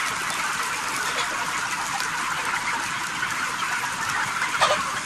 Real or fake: real